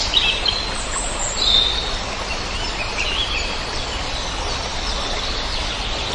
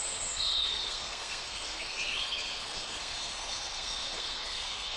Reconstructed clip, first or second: second